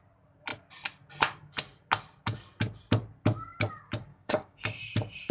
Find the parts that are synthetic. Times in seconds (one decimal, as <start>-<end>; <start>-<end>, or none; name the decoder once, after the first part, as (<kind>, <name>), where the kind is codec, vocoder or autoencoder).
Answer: 4.1-4.8 (codec, DAC)